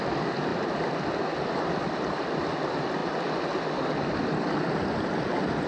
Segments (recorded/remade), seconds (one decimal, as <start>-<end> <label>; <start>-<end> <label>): 0.0-5.7 recorded